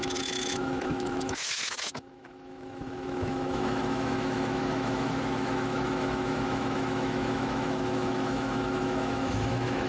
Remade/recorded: remade